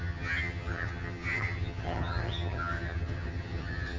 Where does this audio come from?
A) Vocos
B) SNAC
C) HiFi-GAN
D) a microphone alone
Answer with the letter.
C